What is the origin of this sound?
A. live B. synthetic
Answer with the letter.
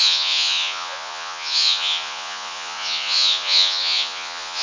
B